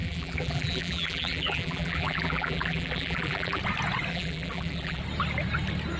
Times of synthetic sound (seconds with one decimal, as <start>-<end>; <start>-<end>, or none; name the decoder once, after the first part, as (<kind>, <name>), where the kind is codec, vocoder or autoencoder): 0.0-3.6 (vocoder, BigVGAN v2); 4.1-5.0